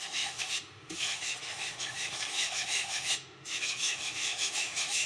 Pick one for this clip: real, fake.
fake